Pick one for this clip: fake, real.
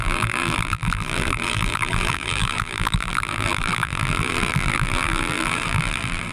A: fake